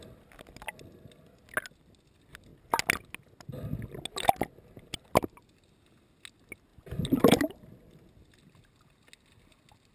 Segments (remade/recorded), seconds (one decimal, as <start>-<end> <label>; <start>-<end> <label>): 0.0-6.7 recorded; 6.7-8.0 remade; 8.0-9.9 recorded